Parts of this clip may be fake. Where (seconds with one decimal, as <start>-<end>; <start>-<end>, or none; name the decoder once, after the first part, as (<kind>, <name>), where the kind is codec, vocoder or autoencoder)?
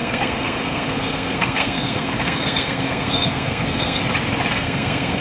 0.0-4.0 (codec, SNAC); 4.5-5.2